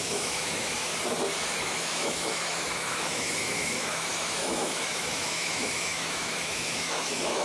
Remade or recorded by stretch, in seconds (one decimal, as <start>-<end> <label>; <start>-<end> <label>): 0.0-0.9 remade; 0.9-1.6 recorded; 1.6-7.4 remade